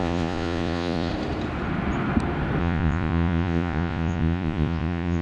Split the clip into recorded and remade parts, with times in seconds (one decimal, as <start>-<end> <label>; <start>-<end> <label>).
0.0-1.1 remade; 1.1-2.6 recorded; 2.6-5.2 remade